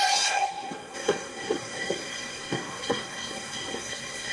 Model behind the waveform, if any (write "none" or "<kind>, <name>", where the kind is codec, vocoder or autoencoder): codec, SNAC